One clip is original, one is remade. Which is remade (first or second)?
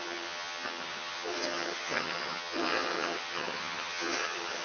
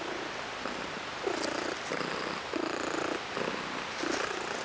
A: first